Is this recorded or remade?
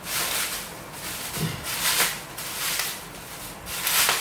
recorded